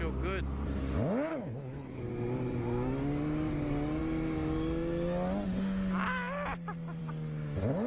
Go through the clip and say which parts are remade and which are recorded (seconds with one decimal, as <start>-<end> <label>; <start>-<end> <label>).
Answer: 0.0-1.3 recorded; 1.3-2.0 remade; 2.0-7.9 recorded